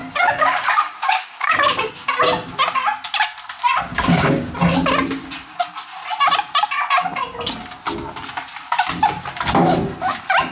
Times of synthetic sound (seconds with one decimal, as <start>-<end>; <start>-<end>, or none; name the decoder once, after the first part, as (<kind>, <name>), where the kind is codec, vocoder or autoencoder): 0.0-1.9 (codec, DAC); 3.9-4.5